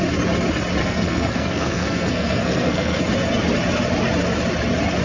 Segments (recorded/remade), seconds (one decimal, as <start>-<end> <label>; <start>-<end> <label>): 0.0-0.8 recorded; 0.8-3.0 remade; 3.0-5.0 recorded